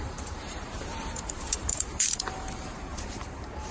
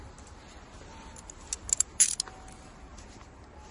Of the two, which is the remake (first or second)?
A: first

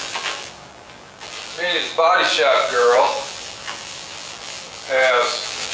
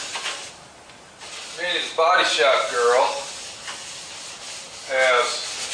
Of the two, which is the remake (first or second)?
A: first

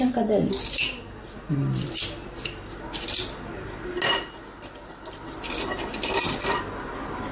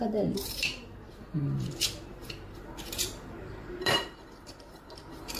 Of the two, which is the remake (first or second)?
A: second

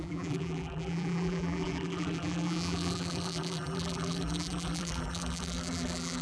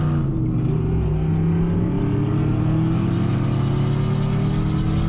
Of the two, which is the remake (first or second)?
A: first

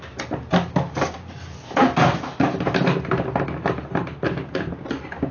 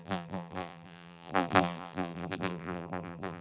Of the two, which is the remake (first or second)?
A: second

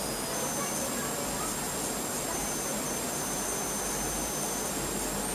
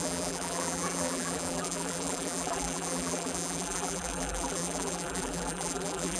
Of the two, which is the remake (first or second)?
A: second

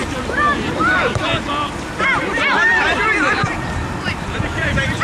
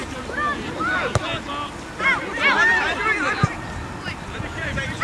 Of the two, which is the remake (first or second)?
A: first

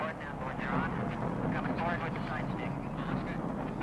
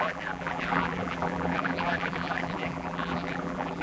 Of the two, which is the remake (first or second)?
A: second